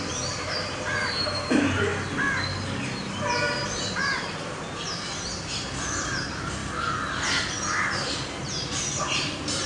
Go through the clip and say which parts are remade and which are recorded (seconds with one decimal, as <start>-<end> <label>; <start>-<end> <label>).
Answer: 0.0-1.9 remade; 1.9-3.1 recorded; 3.1-6.6 remade; 6.6-7.8 recorded; 7.8-9.7 remade